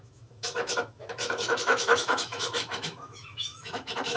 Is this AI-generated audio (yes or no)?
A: yes